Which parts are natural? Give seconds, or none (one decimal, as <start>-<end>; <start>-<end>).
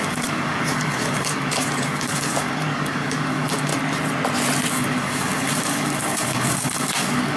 3.7-4.7